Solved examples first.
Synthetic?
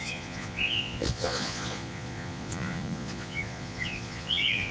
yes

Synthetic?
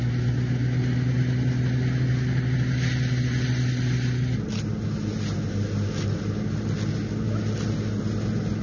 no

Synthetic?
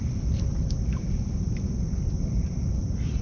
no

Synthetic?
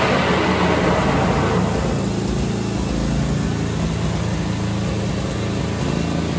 no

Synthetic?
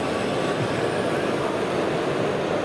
no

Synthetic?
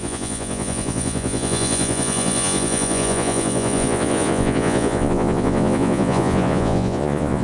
yes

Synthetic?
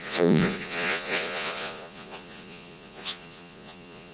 yes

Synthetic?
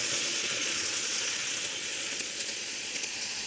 yes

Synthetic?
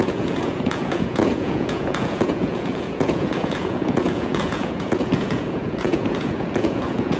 yes